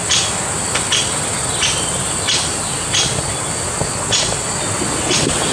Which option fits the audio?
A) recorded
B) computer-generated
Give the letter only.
A